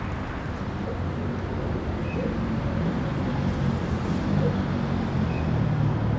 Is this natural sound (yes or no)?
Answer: yes